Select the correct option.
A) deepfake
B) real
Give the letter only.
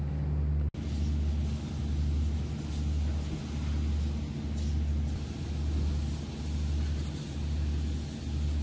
B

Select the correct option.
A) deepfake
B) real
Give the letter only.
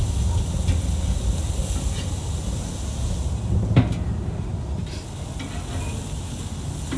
B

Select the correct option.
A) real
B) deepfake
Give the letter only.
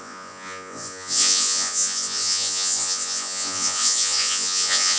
B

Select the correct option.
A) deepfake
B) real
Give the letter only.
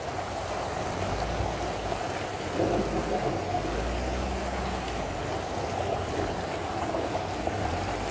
B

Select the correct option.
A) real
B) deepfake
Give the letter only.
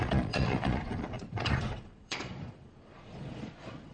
B